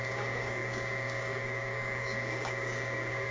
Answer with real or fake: fake